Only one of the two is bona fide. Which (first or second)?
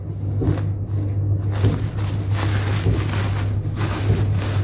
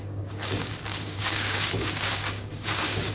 first